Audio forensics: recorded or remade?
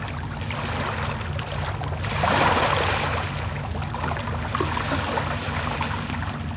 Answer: recorded